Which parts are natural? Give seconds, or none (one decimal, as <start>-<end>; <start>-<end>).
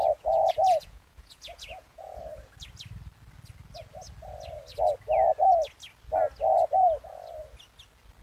2.2-8.2